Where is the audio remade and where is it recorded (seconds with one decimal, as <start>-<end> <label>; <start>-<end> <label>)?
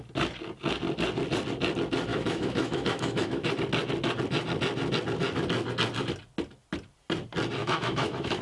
0.0-2.1 recorded; 2.1-3.5 remade; 3.5-7.6 recorded; 7.6-8.4 remade